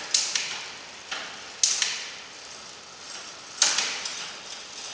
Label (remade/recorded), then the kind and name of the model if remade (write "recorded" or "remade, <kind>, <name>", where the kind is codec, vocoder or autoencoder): recorded